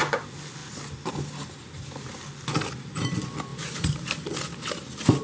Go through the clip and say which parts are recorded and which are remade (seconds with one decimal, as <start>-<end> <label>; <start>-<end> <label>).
0.0-3.5 recorded; 3.5-5.2 remade